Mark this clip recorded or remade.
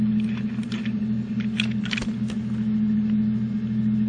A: recorded